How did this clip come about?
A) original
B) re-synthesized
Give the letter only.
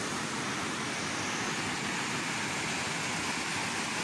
A